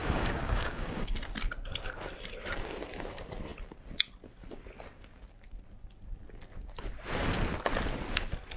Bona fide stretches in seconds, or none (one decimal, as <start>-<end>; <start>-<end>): 1.1-8.6